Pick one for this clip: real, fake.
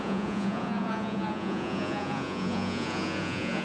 fake